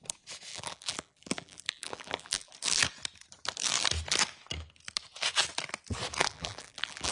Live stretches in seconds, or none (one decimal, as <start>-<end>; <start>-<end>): 0.0-0.5; 2.5-6.2